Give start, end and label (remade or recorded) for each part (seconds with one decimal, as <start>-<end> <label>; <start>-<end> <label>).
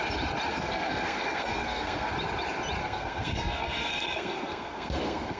0.0-0.5 recorded; 0.5-2.1 remade; 2.1-2.8 recorded; 2.8-5.4 remade